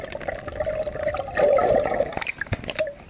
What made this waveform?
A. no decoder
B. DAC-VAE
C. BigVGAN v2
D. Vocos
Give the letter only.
A